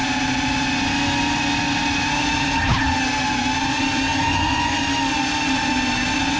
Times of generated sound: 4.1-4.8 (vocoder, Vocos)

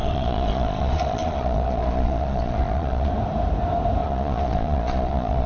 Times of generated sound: 0.0-3.1 (vocoder, Vocos); 4.0-5.5

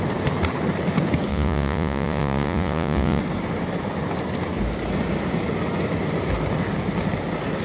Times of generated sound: 1.3-3.2 (vocoder, Vocos)

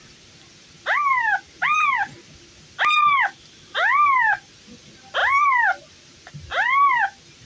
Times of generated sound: none

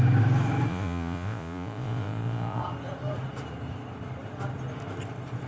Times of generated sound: 0.7-2.6 (vocoder, Vocos)

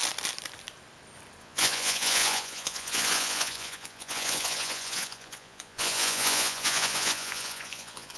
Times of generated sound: 1.4-8.2 (vocoder, Vocos)

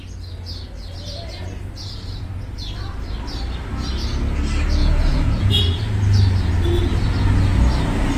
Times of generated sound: 4.8-5.6 (vocoder, Vocos)

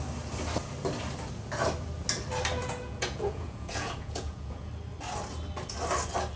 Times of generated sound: 2.6-4.7 (vocoder, Vocos)